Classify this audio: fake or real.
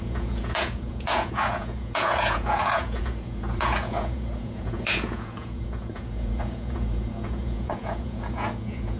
fake